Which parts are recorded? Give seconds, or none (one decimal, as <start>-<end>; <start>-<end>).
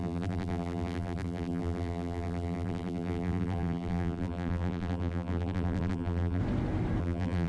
6.4-7.0